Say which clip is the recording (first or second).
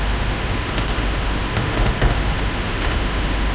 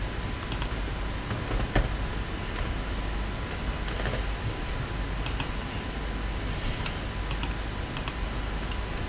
second